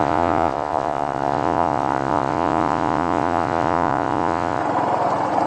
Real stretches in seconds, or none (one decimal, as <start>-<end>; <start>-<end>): 4.6-5.5